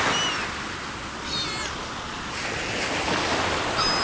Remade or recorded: recorded